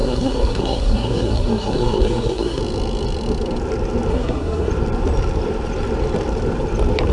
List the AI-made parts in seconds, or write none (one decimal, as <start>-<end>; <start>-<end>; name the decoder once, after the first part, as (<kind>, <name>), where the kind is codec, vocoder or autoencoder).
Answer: 0.0-2.6 (codec, SNAC); 4.1-4.7